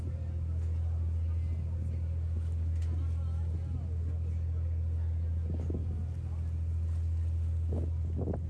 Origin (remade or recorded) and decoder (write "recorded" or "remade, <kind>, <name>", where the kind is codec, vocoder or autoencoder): recorded